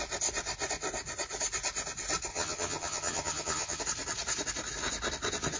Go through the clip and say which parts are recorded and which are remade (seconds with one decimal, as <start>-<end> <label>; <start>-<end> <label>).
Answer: 0.0-2.3 recorded; 2.3-3.8 remade; 3.8-5.6 recorded